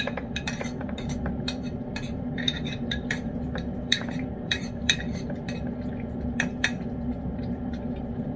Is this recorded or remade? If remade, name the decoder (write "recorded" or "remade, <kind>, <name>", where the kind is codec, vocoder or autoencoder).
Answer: remade, vocoder, BigVGAN v2